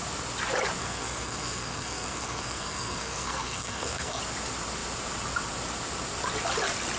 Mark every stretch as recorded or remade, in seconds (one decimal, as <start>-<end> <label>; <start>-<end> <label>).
0.0-0.8 recorded; 0.8-4.2 remade; 4.2-7.0 recorded

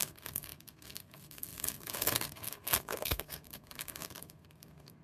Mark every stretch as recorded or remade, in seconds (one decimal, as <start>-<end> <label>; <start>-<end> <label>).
0.0-5.0 remade

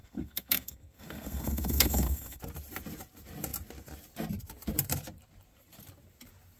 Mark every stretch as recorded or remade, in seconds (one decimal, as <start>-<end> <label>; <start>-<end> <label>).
0.0-2.4 remade; 2.4-6.6 recorded

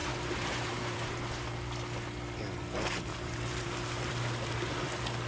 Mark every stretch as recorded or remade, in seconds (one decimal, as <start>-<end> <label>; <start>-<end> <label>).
0.0-1.1 remade; 1.1-3.1 recorded; 3.1-4.7 remade; 4.7-5.3 recorded

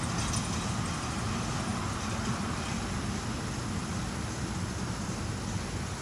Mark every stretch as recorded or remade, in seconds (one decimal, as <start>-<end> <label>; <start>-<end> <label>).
0.0-6.0 recorded

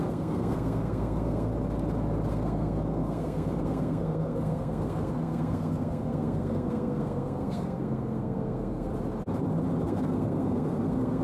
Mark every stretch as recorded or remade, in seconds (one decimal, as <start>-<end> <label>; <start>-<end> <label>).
0.0-1.5 remade; 1.5-2.3 recorded; 2.3-8.9 remade; 8.9-9.8 recorded; 9.8-11.2 remade